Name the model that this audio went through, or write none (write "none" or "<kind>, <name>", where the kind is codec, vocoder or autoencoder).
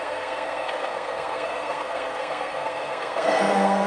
codec, SNAC